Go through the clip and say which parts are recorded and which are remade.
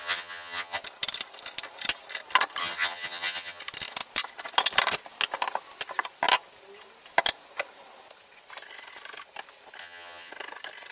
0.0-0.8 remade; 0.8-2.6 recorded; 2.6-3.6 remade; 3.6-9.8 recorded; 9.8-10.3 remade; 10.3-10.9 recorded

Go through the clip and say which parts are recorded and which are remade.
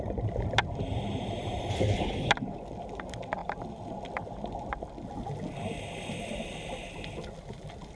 0.0-1.7 recorded; 1.7-2.3 remade; 2.3-8.0 recorded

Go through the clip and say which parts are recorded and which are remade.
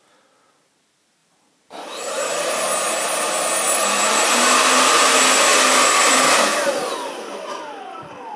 0.0-1.2 recorded; 1.2-2.6 remade; 2.6-6.5 recorded; 6.5-7.8 remade; 7.8-8.4 recorded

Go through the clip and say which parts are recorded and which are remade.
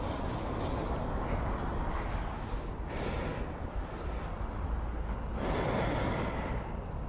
0.0-7.1 recorded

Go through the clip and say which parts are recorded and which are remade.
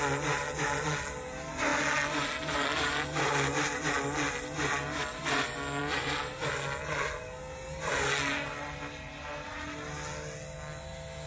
0.0-11.3 recorded